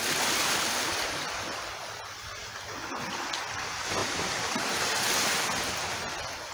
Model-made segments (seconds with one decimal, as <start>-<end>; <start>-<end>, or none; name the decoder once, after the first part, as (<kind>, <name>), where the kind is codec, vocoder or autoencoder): none